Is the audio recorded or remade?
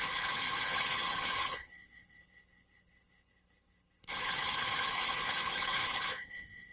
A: remade